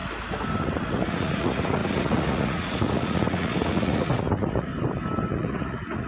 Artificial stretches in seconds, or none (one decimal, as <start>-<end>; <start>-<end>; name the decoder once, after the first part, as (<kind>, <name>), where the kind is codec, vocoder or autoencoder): 0.6-4.7 (vocoder, Vocos); 5.3-6.1